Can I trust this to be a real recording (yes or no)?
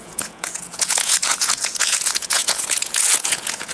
no